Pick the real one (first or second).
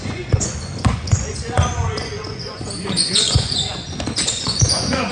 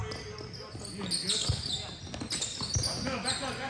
second